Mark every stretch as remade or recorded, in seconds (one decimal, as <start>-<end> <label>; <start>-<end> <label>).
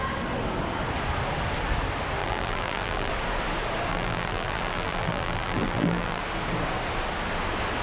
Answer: 0.0-2.2 recorded; 2.2-3.1 remade; 3.1-3.9 recorded; 3.9-6.2 remade; 6.2-7.8 recorded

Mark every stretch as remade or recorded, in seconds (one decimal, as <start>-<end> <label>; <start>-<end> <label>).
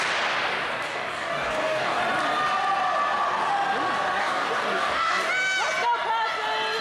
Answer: 0.0-0.9 recorded; 0.9-2.0 remade; 2.0-4.2 recorded; 4.2-5.3 remade; 5.3-6.8 recorded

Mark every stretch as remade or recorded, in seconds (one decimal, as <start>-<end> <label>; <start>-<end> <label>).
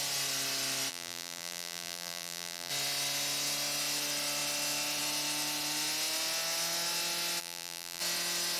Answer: 0.0-0.9 recorded; 0.9-2.7 remade; 2.7-7.4 recorded; 7.4-8.0 remade; 8.0-8.6 recorded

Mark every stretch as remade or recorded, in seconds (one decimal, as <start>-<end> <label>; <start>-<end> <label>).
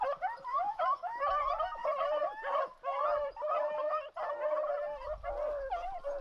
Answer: 0.0-0.5 recorded; 0.5-1.3 remade; 1.3-6.2 recorded